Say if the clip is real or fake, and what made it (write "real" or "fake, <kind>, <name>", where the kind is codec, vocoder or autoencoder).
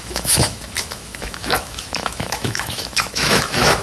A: fake, autoencoder, DAC-VAE